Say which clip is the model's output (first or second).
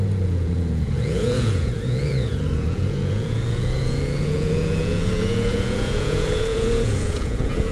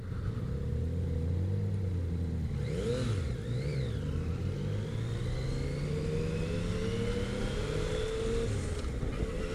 first